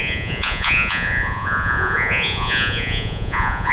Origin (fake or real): fake